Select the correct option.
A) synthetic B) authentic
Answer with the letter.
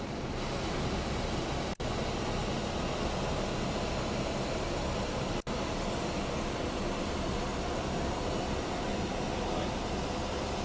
B